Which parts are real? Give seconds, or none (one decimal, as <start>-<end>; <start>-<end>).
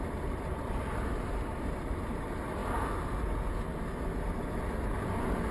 2.6-4.9